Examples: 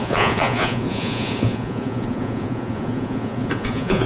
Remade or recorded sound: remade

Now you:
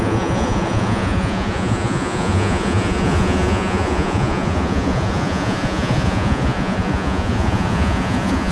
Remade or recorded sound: remade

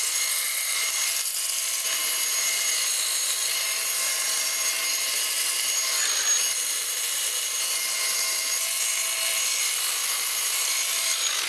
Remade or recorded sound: recorded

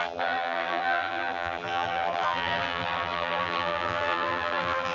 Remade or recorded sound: remade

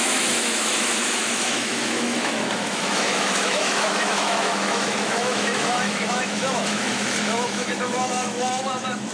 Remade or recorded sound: remade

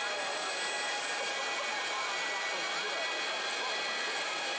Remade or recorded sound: recorded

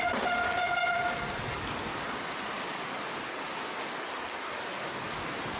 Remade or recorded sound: recorded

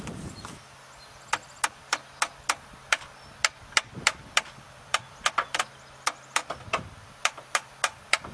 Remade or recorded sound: remade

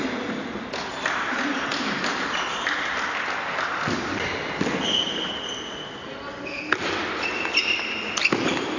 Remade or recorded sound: recorded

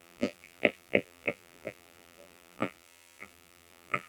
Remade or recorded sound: remade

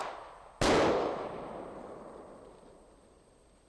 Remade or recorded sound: recorded